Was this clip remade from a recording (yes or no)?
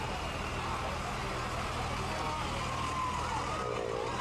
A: no